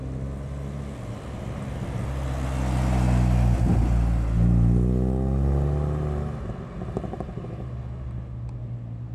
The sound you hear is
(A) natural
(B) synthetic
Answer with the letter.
A